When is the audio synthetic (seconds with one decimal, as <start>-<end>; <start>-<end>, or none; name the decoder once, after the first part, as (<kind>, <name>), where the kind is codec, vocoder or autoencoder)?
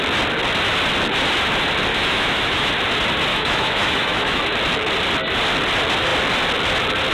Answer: 1.9-2.7 (autoencoder, DAC-VAE); 3.3-4.4